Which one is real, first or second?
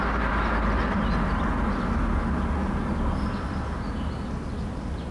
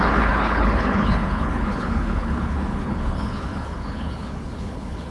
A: first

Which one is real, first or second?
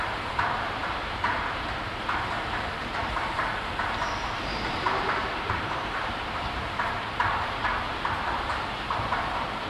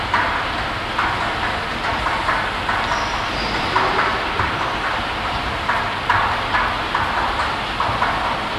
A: second